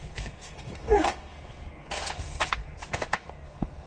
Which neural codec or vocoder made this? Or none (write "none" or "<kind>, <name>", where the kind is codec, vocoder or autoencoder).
codec, SNAC